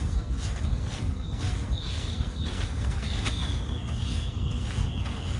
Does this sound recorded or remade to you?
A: remade